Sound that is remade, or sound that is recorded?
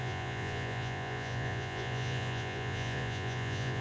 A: remade